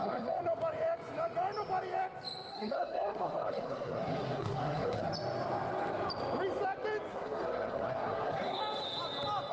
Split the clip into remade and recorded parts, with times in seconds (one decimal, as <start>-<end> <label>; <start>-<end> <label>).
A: 0.0-0.4 remade; 0.4-2.5 recorded; 2.5-5.1 remade; 5.1-7.1 recorded; 7.1-8.6 remade; 8.6-9.5 recorded